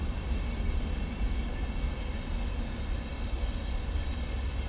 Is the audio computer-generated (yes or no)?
no